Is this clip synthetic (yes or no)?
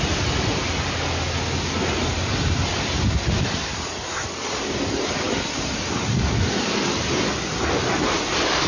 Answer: no